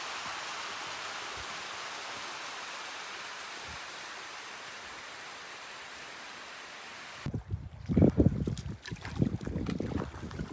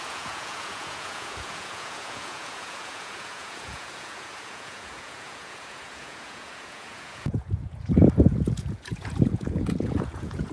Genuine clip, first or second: first